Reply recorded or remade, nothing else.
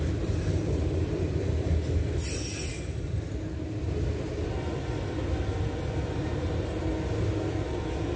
recorded